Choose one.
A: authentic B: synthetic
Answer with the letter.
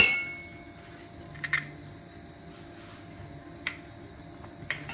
A